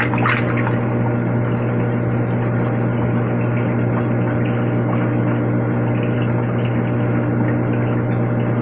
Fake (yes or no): no